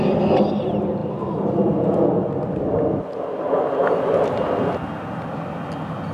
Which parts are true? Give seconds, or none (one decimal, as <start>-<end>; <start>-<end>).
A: 0.0-6.1